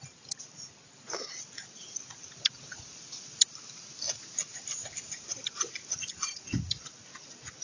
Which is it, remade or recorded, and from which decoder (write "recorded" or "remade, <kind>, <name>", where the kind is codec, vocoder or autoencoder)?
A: recorded